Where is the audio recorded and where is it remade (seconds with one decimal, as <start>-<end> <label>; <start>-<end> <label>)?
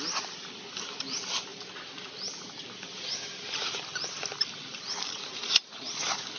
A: 0.0-6.4 recorded